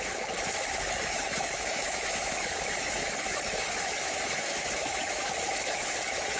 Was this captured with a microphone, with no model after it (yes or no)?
no